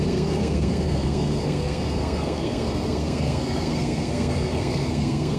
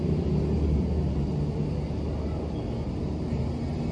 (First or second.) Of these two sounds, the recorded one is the second